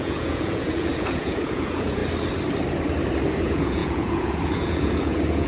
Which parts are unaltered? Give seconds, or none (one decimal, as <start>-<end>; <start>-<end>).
2.0-3.4